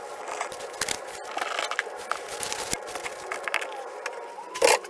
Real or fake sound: real